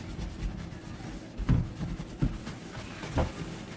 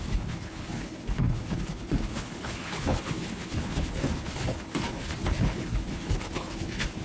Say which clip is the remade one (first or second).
second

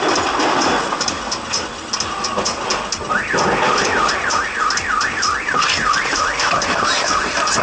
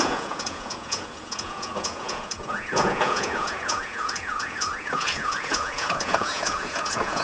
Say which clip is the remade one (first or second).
second